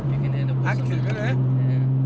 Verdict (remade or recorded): recorded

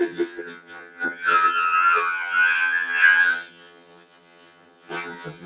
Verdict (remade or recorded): remade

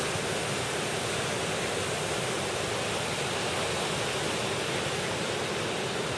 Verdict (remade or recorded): recorded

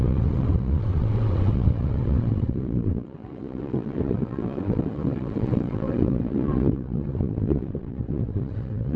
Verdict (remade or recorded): remade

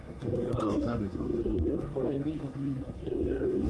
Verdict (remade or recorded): remade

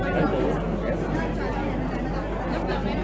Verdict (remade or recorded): recorded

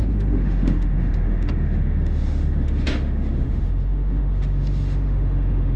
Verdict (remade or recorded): remade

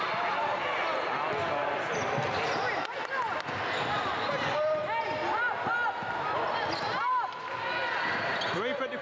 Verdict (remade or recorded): recorded